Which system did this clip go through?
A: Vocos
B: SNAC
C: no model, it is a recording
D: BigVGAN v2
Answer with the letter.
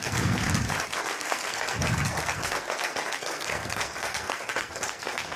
B